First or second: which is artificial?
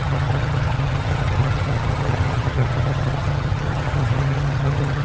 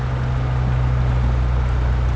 first